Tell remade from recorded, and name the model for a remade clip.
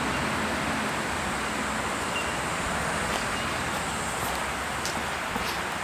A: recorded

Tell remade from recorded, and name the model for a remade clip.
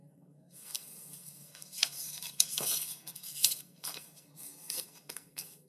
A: remade, codec, SNAC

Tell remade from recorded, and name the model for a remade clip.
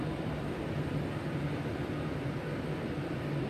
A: recorded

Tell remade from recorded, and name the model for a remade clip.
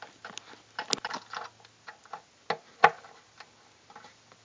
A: recorded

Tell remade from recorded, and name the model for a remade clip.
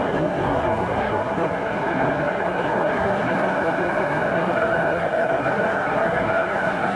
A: remade, codec, SNAC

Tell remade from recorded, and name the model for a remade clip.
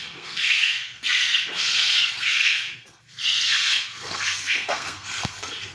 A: remade, codec, SNAC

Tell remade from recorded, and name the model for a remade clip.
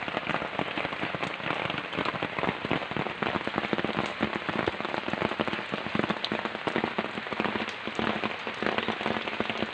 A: recorded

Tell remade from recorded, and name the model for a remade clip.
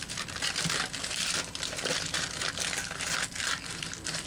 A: recorded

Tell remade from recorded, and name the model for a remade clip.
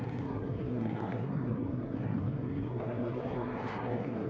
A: remade, codec, SNAC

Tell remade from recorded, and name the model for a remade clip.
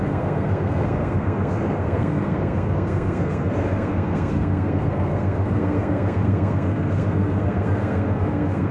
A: remade, codec, SNAC